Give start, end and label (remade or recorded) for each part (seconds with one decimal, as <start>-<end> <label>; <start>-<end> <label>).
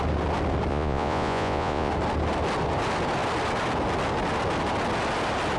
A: 0.0-0.7 recorded; 0.7-1.9 remade; 1.9-5.6 recorded